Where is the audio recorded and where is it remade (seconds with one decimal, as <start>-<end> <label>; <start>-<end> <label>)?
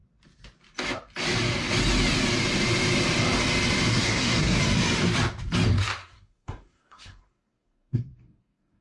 0.0-3.9 recorded; 3.9-4.6 remade; 4.6-6.0 recorded; 6.0-8.8 remade